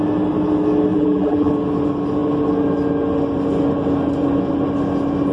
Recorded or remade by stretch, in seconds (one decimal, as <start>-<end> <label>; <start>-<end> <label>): 0.0-0.9 recorded; 0.9-1.5 remade; 1.5-5.3 recorded

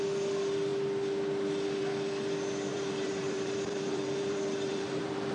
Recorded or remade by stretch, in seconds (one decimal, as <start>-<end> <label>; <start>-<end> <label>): 0.0-2.7 recorded; 2.7-5.3 remade

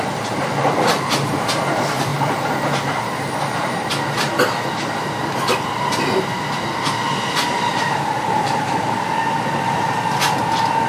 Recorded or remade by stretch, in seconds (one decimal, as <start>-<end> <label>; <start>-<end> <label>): 0.0-2.1 recorded; 2.1-3.9 remade; 3.9-7.7 recorded; 7.7-9.1 remade; 9.1-10.9 recorded

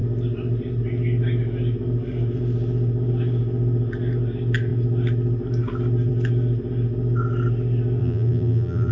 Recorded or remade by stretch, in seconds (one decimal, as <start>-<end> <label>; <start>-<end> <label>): 0.0-8.0 recorded; 8.0-8.9 remade

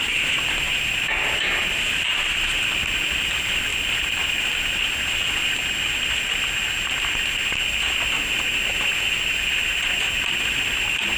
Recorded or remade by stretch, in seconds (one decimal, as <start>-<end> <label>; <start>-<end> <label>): 0.0-1.6 recorded; 1.6-2.6 remade; 2.6-11.2 recorded